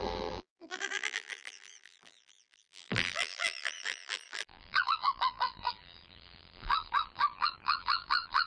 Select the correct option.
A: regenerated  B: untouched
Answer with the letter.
A